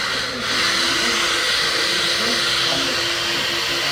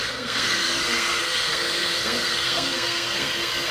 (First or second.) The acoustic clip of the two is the first